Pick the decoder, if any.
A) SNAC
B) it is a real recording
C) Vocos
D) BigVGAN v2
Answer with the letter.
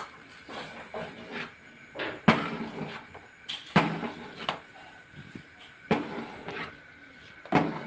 B